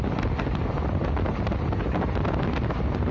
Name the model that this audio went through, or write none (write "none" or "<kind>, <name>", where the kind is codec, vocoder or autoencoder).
none